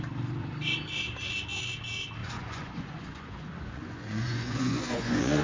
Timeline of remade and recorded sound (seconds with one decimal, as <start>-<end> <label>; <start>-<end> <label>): 0.0-2.2 recorded; 2.2-5.4 remade